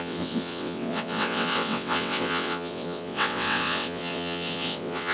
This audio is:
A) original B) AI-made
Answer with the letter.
B